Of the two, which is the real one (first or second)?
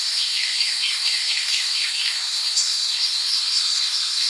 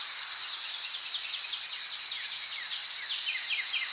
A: second